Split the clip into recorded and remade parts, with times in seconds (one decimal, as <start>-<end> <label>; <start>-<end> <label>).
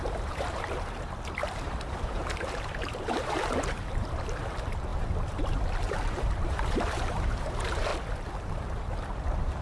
0.0-7.9 remade; 7.9-8.5 recorded; 8.5-9.6 remade